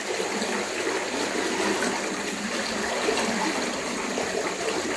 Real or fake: real